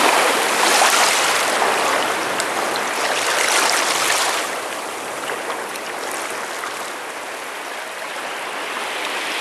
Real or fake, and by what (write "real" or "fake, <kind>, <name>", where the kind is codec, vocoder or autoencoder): real